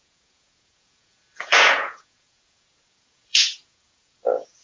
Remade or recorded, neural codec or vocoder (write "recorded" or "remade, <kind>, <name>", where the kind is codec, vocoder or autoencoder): remade, vocoder, Vocos